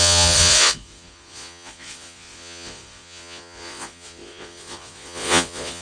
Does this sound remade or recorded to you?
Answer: remade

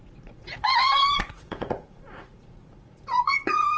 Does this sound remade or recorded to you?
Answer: remade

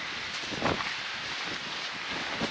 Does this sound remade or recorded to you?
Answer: recorded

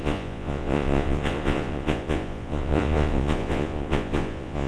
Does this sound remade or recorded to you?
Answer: remade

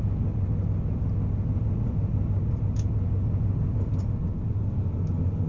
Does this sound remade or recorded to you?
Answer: recorded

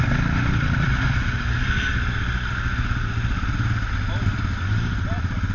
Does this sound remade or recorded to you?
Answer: recorded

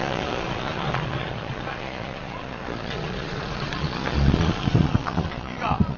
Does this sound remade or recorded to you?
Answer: remade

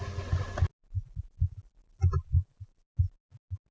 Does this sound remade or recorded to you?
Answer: recorded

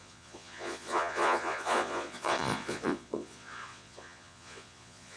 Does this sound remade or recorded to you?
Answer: remade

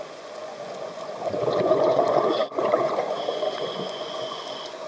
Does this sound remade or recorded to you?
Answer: remade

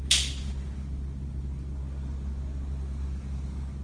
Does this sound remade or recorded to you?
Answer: recorded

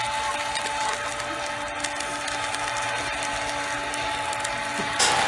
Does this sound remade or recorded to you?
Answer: recorded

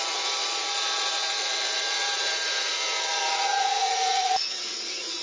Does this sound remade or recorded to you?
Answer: remade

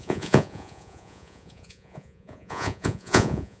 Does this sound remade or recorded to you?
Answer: remade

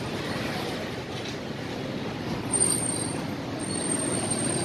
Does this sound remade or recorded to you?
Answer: recorded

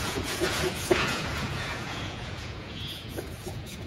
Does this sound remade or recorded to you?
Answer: remade